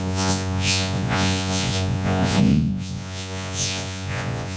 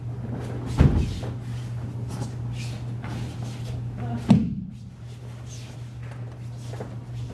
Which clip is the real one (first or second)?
second